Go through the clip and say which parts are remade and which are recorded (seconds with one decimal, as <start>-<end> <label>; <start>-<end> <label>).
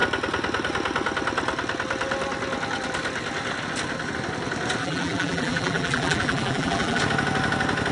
0.0-4.8 recorded; 4.8-7.0 remade; 7.0-7.9 recorded